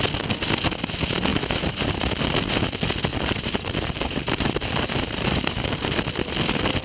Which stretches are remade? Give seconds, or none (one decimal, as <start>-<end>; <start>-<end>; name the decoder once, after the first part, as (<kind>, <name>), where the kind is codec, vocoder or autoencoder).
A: 1.3-2.1 (vocoder, BigVGAN v2); 3.1-6.0